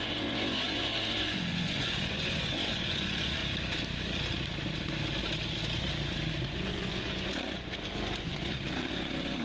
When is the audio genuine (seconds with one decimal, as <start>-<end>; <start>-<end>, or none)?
3.4-6.4